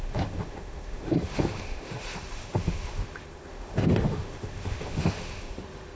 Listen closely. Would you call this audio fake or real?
fake